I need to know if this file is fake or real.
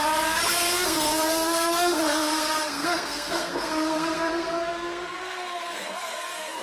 fake